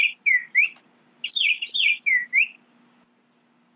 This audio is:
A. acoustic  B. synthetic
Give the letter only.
A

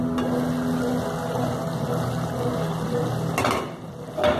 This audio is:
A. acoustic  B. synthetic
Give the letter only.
A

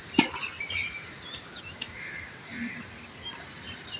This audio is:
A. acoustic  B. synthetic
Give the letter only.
A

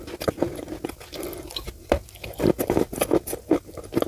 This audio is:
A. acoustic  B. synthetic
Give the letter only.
A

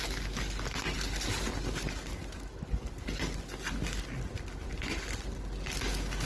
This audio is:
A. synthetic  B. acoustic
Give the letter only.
B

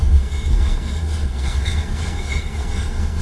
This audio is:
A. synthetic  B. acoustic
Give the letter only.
A